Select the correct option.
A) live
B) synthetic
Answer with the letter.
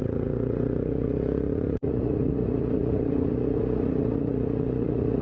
B